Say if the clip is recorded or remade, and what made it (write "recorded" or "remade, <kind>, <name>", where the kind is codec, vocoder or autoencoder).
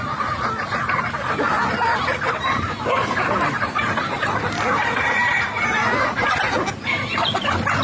recorded